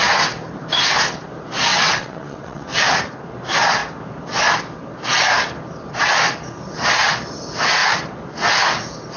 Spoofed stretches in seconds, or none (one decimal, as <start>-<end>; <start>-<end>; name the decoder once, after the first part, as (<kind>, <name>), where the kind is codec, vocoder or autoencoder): 1.7-2.7 (vocoder, WaveNeXt)